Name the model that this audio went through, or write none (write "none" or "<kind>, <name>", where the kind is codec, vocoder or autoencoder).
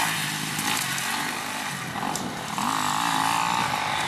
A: none